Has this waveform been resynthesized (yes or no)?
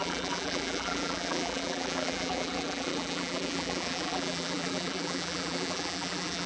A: yes